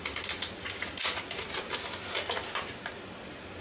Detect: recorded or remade recorded